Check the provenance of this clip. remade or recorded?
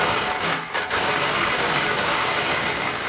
remade